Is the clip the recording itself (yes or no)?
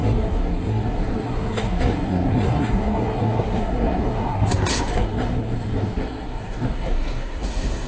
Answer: no